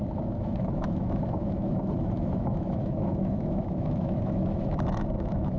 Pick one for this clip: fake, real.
fake